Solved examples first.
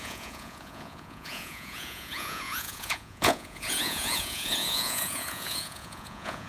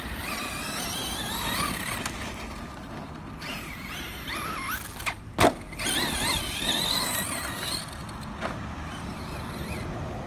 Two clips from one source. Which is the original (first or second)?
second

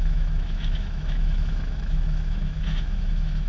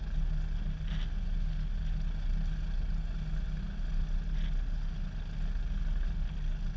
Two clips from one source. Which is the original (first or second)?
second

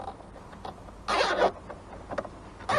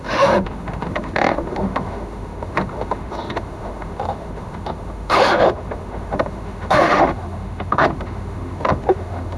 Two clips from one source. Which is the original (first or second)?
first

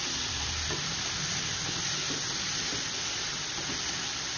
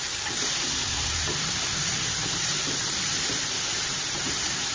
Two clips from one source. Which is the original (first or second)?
first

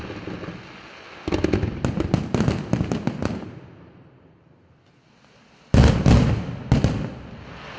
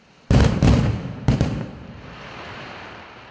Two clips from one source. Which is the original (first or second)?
first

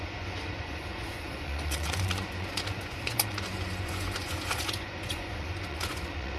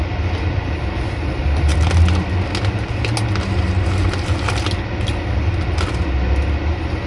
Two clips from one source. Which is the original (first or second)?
second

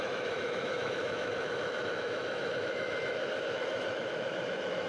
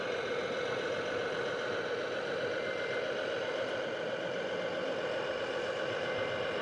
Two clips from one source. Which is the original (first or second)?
second